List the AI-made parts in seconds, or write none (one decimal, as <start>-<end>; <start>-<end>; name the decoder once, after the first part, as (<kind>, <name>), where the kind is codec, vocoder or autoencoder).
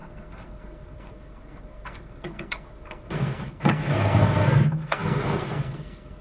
0.0-6.2 (codec, SNAC)